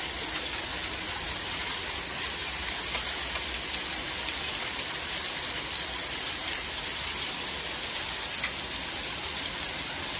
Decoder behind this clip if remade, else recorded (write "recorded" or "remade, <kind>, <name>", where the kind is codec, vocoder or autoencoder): recorded